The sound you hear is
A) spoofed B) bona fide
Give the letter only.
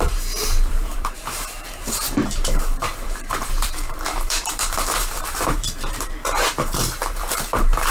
A